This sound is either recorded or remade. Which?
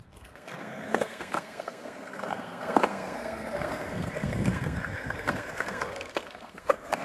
remade